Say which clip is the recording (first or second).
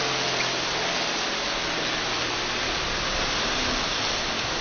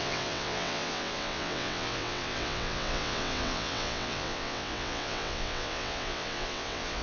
first